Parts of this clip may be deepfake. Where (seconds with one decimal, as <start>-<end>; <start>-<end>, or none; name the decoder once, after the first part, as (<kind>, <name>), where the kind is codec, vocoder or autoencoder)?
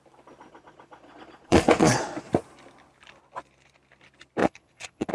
0.5-2.3 (vocoder, Vocos); 4.4-5.1